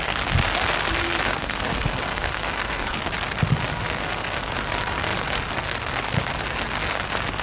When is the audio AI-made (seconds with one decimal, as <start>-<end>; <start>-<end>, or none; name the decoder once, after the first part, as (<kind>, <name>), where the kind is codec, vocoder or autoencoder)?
1.4-3.0 (codec, SNAC); 4.0-4.5